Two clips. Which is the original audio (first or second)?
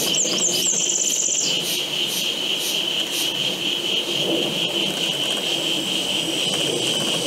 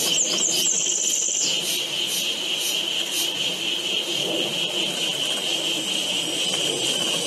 first